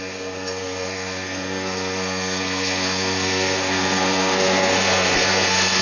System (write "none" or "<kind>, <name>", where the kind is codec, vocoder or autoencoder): codec, SNAC